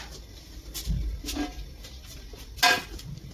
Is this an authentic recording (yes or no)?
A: yes